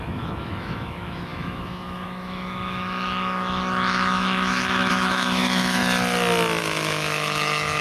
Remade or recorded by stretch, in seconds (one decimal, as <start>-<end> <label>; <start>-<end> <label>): 0.0-5.8 remade; 5.8-6.6 recorded; 6.6-7.8 remade